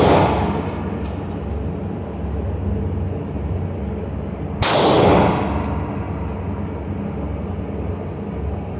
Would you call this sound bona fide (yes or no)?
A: yes